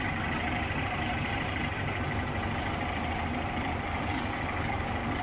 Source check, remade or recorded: recorded